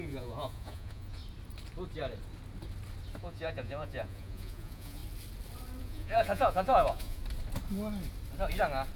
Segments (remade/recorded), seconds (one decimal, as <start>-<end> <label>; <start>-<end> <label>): 0.0-1.2 remade; 1.2-3.2 recorded; 3.2-5.0 remade; 5.0-5.8 recorded; 5.8-7.2 remade; 7.2-9.0 recorded